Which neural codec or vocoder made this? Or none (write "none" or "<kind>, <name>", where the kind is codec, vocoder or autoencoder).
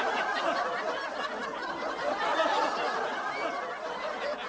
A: none